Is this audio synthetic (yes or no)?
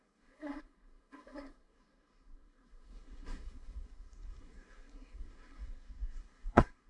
yes